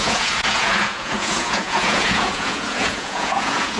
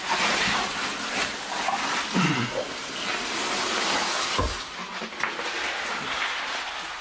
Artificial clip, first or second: first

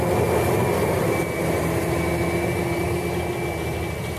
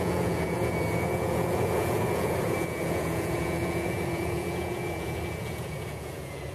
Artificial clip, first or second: second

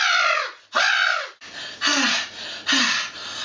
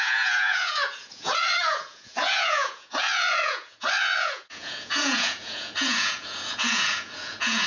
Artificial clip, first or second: second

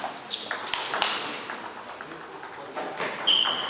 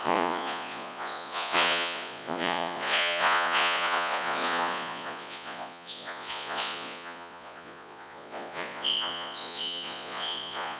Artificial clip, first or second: second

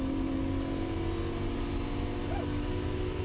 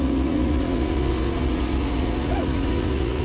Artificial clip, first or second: second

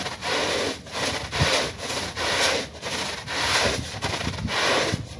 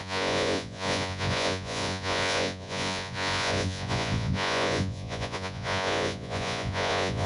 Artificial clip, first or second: second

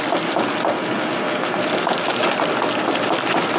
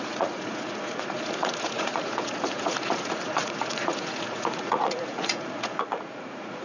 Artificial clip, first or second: second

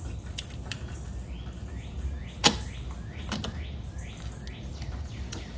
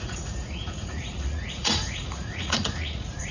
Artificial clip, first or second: second